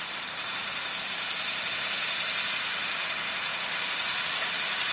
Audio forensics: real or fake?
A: fake